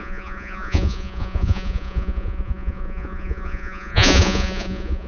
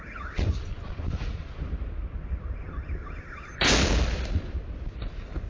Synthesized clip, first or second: first